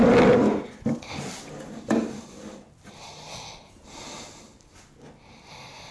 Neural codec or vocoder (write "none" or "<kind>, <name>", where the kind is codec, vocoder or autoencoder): none